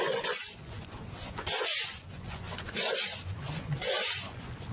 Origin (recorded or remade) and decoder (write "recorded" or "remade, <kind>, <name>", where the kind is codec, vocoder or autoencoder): remade, vocoder, Vocos